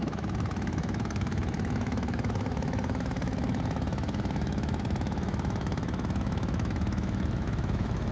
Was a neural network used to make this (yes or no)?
yes